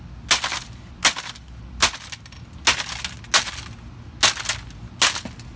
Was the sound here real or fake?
real